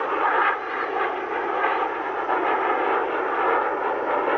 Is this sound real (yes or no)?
yes